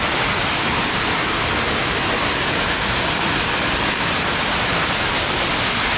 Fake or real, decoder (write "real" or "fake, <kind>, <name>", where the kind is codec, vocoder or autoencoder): real